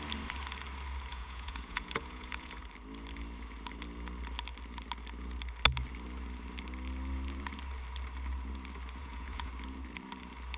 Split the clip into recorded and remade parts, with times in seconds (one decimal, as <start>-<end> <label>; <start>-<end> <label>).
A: 0.0-1.1 recorded; 1.1-2.6 remade; 2.6-9.0 recorded; 9.0-9.5 remade; 9.5-10.6 recorded